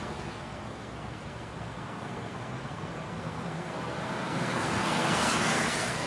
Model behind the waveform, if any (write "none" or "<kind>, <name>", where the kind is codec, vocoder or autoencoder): codec, SNAC